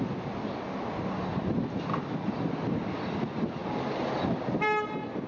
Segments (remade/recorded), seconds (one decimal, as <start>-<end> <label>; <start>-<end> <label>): 0.0-5.3 recorded